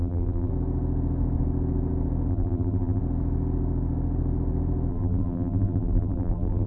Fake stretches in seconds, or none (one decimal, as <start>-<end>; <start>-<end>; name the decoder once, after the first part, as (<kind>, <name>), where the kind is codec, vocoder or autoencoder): 0.0-0.5 (vocoder, BigVGAN v2); 2.3-3.0; 4.9-6.7